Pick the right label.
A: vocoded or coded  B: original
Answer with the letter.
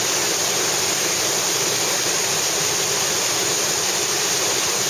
B